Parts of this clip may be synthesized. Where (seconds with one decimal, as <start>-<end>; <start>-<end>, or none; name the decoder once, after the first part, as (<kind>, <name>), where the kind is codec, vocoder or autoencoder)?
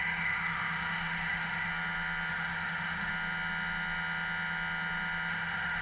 0.0-1.7 (autoencoder, DAC-VAE); 2.3-3.1; 5.3-5.8